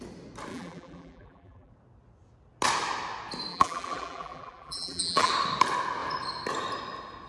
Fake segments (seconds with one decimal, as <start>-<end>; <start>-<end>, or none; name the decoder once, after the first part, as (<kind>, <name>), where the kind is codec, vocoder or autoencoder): 0.5-1.7 (vocoder, BigVGAN v2); 3.5-5.3